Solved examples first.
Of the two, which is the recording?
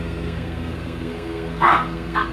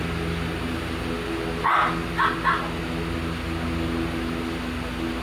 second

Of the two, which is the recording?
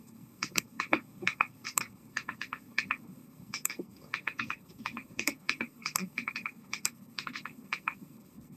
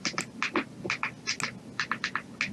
second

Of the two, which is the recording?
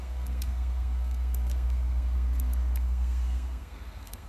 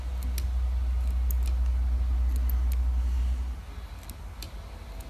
second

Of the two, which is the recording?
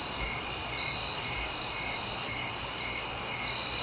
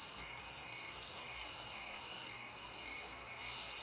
first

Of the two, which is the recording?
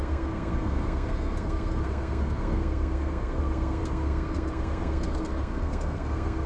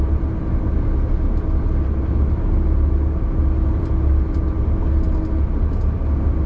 second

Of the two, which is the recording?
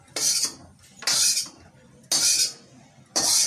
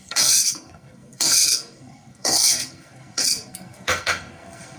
first